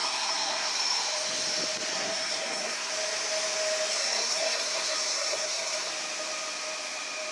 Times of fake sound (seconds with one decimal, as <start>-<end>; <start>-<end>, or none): 0.0-0.7; 1.9-2.9; 3.9-5.9